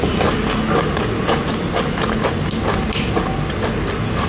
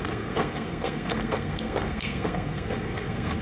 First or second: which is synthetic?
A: second